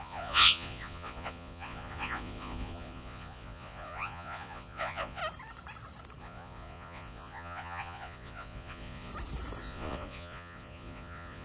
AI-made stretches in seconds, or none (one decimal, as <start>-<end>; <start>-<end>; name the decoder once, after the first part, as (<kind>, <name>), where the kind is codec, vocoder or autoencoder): 0.0-5.2 (vocoder, Vocos); 6.2-9.1; 9.6-11.4